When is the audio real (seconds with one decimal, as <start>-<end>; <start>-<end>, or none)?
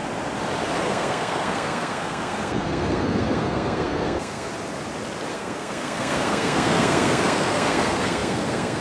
0.0-0.8; 4.5-5.3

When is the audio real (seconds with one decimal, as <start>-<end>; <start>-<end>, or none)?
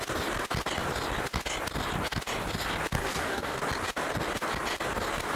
0.0-3.0; 3.6-5.4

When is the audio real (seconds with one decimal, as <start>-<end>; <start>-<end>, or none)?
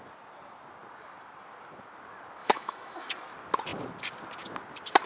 0.0-2.4; 3.1-5.1